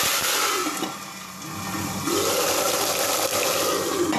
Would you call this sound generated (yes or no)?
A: no